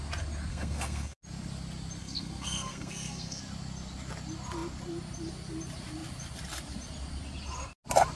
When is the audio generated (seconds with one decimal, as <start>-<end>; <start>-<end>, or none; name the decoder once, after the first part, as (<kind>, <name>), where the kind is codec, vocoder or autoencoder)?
0.5-1.2 (codec, SNAC); 2.0-3.4